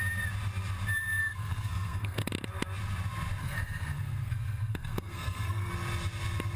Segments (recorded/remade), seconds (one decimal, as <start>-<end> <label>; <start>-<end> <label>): 0.0-1.2 recorded; 1.2-2.3 remade; 2.3-3.4 recorded; 3.4-5.7 remade; 5.7-6.6 recorded

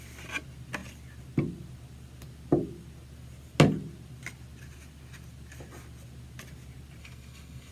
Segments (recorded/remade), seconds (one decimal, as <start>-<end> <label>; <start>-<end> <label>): 0.0-7.0 recorded; 7.0-7.7 remade

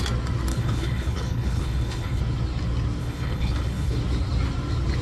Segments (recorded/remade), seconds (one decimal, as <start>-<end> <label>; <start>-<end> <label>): 0.0-0.5 recorded; 0.5-2.2 remade; 2.2-3.0 recorded; 3.0-4.0 remade; 4.0-5.0 recorded

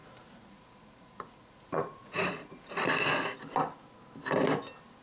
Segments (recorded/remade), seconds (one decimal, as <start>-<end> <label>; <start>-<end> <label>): 0.0-2.7 remade; 2.7-5.0 recorded

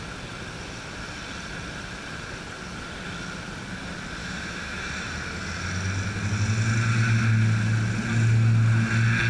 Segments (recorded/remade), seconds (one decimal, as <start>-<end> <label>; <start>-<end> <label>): 0.0-4.2 recorded; 4.2-4.9 remade; 4.9-9.3 recorded

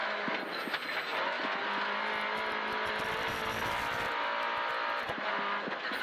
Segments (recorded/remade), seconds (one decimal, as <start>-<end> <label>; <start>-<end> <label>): 0.0-6.0 recorded